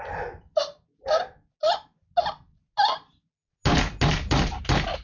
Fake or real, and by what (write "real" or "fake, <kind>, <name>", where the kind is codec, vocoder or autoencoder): real